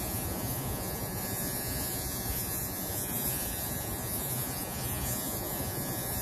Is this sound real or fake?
fake